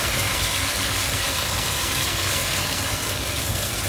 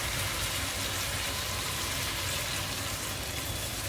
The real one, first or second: second